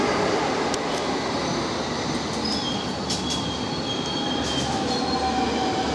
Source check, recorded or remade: recorded